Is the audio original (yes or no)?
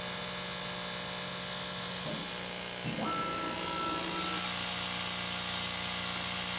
yes